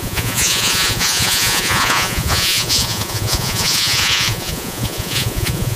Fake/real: fake